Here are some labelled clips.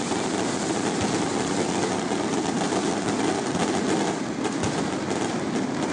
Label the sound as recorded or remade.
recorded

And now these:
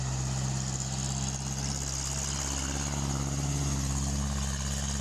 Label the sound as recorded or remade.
recorded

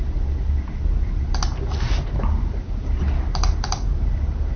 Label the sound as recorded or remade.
recorded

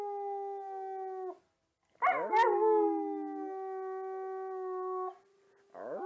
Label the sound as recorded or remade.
recorded